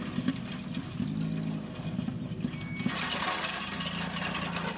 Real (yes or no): yes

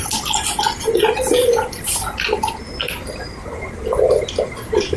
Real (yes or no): yes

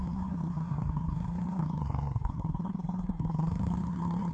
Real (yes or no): no